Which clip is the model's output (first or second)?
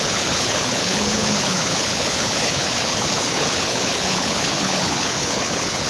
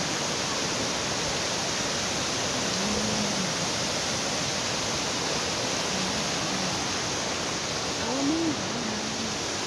first